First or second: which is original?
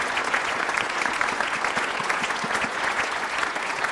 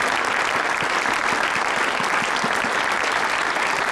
second